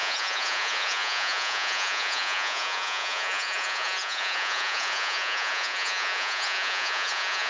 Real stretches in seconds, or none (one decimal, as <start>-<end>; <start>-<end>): none